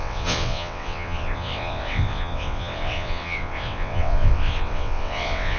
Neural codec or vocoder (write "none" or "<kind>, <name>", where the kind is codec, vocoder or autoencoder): vocoder, WaveNeXt